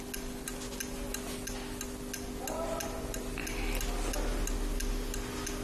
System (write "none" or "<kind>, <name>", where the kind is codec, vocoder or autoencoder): none